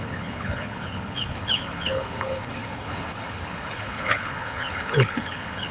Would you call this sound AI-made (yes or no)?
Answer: yes